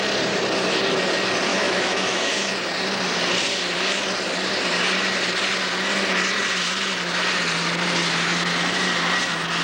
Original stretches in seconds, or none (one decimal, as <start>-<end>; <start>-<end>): 0.0-1.5; 2.5-9.6